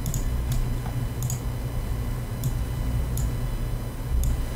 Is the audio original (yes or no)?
yes